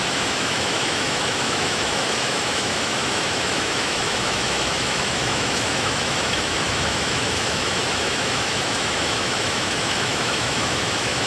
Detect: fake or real fake